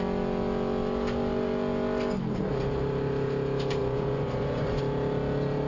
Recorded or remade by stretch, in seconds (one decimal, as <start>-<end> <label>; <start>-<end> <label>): 0.0-3.8 recorded; 3.8-4.8 remade; 4.8-5.7 recorded